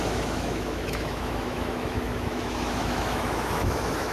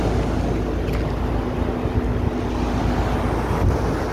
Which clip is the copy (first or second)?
first